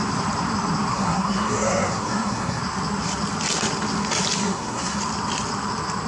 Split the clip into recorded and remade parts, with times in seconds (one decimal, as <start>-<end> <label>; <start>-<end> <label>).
0.0-0.9 recorded; 0.9-2.6 remade; 2.6-4.4 recorded; 4.4-5.0 remade; 5.0-6.1 recorded

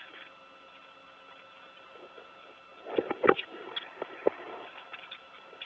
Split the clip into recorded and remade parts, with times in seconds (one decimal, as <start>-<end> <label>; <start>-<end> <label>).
0.0-5.7 recorded

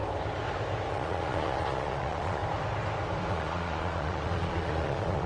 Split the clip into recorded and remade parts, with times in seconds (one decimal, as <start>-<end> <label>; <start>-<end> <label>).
0.0-0.9 recorded; 0.9-2.4 remade; 2.4-3.3 recorded; 3.3-5.3 remade

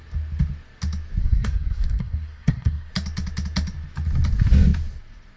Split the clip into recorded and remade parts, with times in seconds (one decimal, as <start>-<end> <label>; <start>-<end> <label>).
0.0-1.2 recorded; 1.2-2.9 remade; 2.9-5.4 recorded

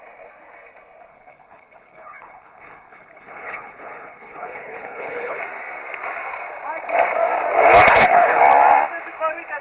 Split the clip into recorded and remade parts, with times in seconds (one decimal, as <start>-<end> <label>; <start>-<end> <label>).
0.0-1.1 recorded; 1.1-5.4 remade; 5.4-7.9 recorded; 7.9-8.4 remade; 8.4-9.6 recorded

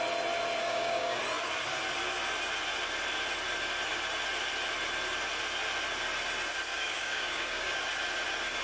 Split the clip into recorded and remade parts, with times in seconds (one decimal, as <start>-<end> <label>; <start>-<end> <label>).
0.0-0.6 recorded; 0.6-1.2 remade; 1.2-6.7 recorded; 6.7-7.8 remade; 7.8-8.6 recorded

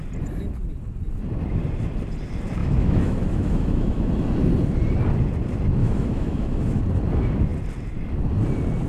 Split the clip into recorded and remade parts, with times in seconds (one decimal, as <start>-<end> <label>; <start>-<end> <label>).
0.0-2.6 recorded; 2.6-4.1 remade; 4.1-5.8 recorded; 5.8-6.8 remade; 6.8-8.9 recorded